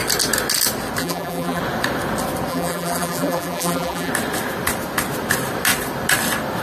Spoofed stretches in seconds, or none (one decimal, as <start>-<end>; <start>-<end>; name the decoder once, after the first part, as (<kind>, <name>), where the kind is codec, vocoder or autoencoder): 1.0-1.6 (vocoder, BigVGAN v2); 2.5-4.1

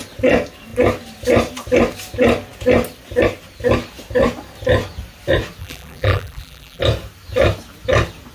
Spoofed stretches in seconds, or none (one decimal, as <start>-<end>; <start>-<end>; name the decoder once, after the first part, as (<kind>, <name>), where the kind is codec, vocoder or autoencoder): 5.6-6.8 (vocoder, BigVGAN v2)

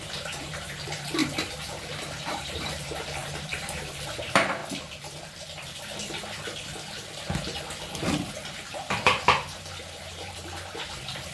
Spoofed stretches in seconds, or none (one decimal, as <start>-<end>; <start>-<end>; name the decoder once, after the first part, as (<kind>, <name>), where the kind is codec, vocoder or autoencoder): 0.0-1.2 (vocoder, BigVGAN v2); 2.1-4.6; 8.3-11.3

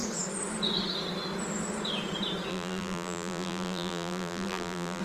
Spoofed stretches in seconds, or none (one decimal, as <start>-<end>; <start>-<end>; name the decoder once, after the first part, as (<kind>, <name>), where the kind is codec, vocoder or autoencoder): 2.5-5.0 (vocoder, BigVGAN v2)

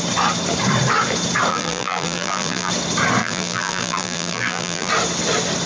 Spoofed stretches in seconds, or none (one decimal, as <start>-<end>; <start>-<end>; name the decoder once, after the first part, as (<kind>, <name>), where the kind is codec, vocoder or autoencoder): 1.5-2.7 (vocoder, BigVGAN v2); 3.2-4.9

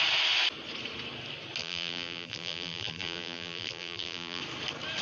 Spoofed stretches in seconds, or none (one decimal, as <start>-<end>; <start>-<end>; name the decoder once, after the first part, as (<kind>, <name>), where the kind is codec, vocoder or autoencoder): 1.6-4.4 (vocoder, BigVGAN v2)